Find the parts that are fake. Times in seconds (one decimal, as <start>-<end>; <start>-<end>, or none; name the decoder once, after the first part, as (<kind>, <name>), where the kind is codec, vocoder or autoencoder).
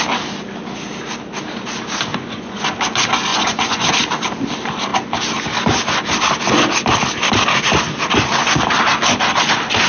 2.1-2.7 (vocoder, Vocos); 3.3-3.9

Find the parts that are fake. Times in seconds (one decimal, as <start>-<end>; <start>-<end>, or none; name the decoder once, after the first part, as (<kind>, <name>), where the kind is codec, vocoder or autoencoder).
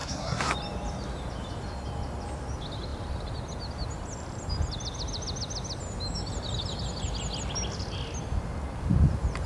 0.0-0.5 (codec, SNAC)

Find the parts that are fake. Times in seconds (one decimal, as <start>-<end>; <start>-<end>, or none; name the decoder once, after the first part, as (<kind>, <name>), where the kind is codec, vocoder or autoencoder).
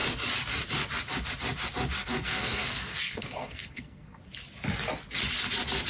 2.0-4.2 (codec, SNAC)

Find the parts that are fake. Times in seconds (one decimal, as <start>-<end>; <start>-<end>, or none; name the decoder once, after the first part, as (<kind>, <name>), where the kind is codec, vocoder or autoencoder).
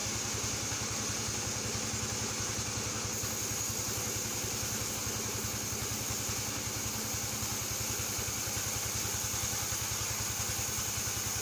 none